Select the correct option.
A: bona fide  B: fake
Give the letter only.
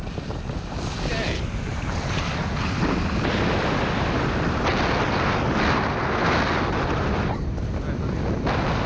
A